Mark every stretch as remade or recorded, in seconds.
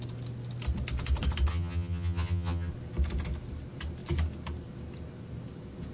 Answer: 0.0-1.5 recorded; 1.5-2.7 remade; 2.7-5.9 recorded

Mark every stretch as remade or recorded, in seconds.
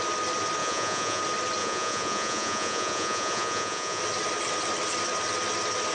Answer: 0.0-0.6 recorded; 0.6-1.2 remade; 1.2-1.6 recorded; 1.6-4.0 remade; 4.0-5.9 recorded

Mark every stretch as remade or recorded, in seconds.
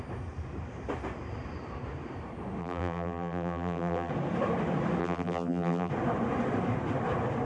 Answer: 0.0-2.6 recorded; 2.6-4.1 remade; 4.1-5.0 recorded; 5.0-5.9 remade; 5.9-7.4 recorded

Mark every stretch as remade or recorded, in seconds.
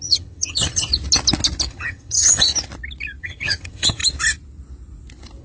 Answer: 0.0-0.9 remade; 0.9-1.7 recorded; 1.7-2.5 remade; 2.5-3.2 recorded; 3.2-4.0 remade; 4.0-5.4 recorded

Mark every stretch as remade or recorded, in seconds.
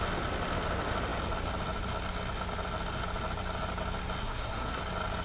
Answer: 0.0-4.2 recorded; 4.2-4.8 remade; 4.8-5.2 recorded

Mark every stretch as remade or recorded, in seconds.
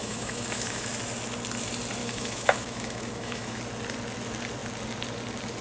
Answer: 0.0-0.9 remade; 0.9-2.0 recorded; 2.0-3.6 remade; 3.6-5.6 recorded